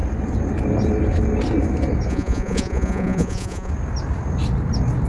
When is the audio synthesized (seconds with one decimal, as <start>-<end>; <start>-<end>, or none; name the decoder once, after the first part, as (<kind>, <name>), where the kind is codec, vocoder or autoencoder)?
2.1-3.7 (vocoder, Vocos)